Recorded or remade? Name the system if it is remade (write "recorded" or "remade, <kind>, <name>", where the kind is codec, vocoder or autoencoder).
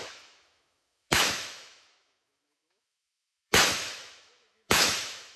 remade, autoencoder, DAC-VAE